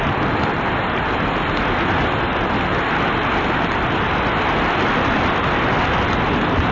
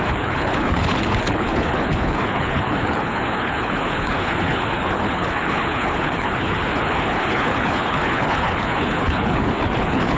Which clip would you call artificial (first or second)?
second